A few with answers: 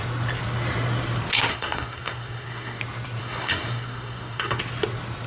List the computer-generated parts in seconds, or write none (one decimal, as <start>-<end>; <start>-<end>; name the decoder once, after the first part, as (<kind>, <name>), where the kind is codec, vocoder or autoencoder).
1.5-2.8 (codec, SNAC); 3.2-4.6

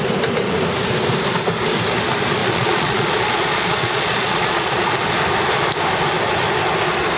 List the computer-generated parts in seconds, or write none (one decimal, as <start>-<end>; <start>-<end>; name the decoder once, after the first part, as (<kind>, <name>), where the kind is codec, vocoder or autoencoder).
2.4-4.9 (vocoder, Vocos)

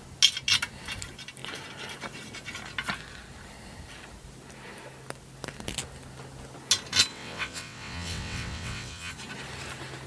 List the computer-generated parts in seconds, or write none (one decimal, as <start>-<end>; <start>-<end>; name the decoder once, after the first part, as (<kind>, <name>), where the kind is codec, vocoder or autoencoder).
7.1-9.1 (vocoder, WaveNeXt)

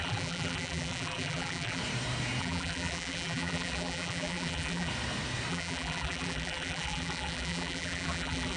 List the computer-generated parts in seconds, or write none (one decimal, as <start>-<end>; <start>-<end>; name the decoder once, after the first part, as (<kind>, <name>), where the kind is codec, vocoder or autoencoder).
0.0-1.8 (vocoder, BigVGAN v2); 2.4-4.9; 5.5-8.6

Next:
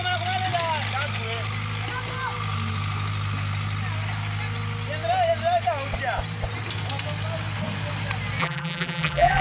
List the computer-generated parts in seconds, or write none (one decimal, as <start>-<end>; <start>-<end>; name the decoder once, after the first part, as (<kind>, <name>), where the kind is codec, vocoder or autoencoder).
8.4-9.4 (vocoder, BigVGAN v2)

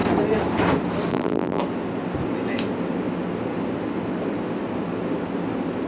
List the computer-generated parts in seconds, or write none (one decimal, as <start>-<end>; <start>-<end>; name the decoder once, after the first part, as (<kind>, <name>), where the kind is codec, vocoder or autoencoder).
1.1-1.6 (vocoder, BigVGAN v2)